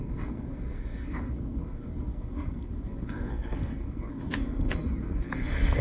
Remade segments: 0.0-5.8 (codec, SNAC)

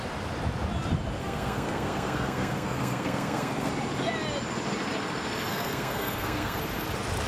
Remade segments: 1.2-3.7 (codec, SNAC); 5.5-6.6

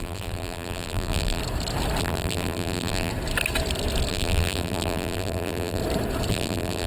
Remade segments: 0.0-1.4 (vocoder, BigVGAN v2); 2.0-3.1; 4.1-5.8; 6.3-6.9

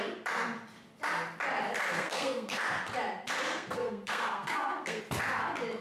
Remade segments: 1.9-2.6 (codec, SNAC); 3.5-5.0

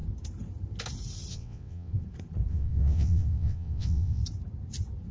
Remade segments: 1.3-1.9 (vocoder, WaveNeXt); 2.5-4.2

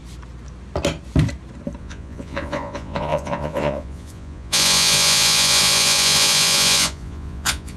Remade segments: 1.8-7.8 (vocoder, Vocos)

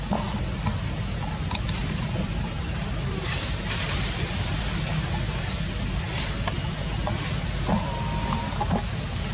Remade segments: 1.8-4.6 (vocoder, BigVGAN v2)

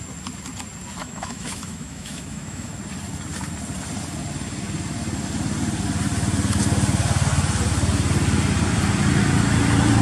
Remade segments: 1.0-2.7 (autoencoder, DAC-VAE)